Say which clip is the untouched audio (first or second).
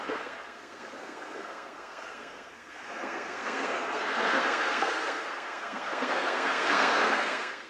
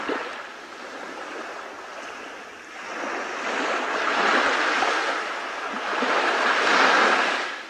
second